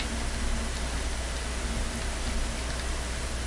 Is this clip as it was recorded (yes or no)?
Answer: yes